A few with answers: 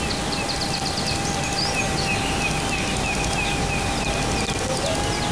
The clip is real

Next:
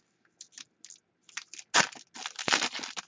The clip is real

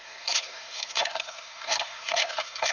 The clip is fake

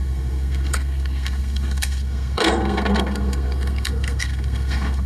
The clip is fake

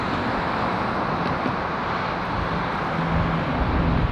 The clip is real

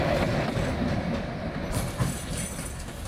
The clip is real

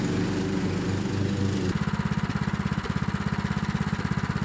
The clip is real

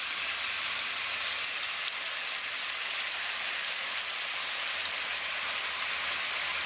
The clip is real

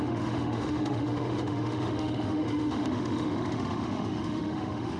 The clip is fake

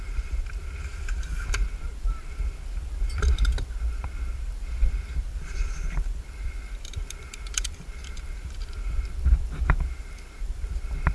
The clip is fake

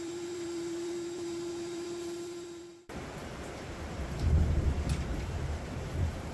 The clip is fake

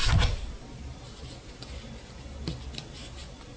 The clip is real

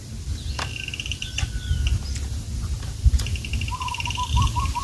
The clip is real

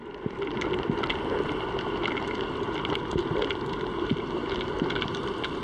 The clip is real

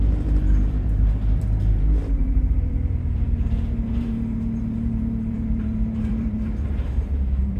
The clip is fake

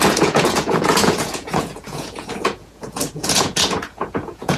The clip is fake